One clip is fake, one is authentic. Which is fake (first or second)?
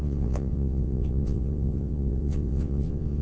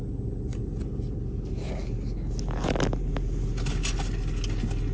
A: first